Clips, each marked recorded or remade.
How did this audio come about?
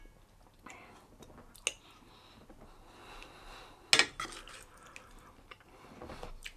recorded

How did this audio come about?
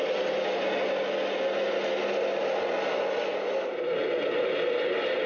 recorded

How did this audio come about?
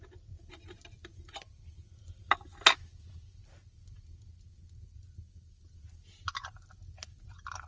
recorded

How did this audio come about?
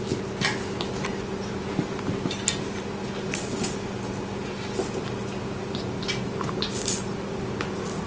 recorded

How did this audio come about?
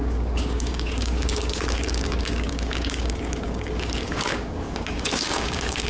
remade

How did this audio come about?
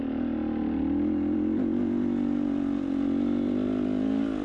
recorded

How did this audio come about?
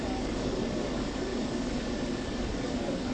remade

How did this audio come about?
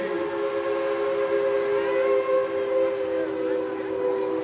recorded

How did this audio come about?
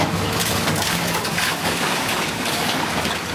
remade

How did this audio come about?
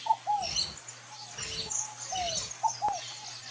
recorded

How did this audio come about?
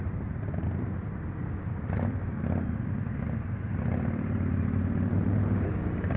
recorded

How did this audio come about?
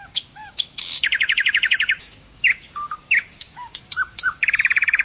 remade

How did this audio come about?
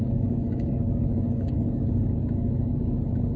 remade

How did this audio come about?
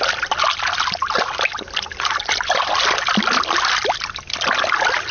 recorded